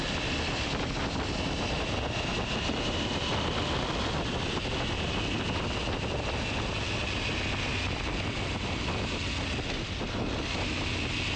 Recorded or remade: recorded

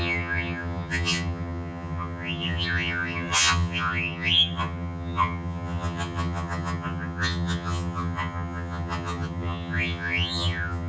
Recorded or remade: remade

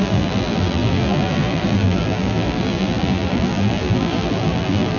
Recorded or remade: remade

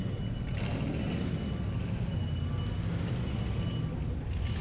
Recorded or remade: recorded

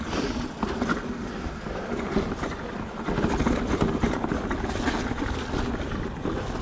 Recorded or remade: recorded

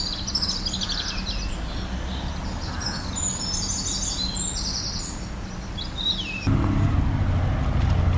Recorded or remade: recorded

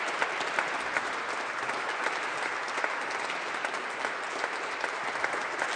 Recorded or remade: recorded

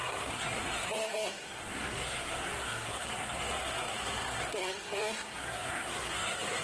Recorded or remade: remade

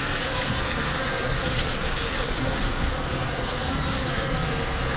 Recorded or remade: remade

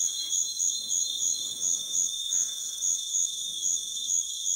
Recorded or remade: remade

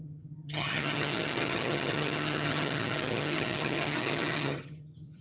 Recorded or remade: remade